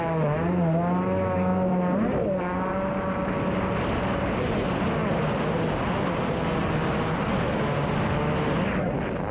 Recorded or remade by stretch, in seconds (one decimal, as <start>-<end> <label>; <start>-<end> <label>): 0.0-9.3 recorded